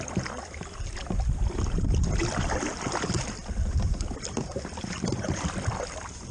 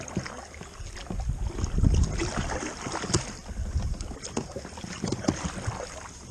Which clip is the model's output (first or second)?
first